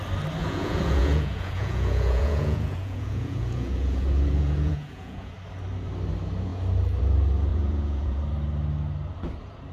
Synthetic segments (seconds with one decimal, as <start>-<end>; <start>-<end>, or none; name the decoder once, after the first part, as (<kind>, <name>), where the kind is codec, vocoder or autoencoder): 0.4-5.3 (vocoder, Vocos); 7.5-8.2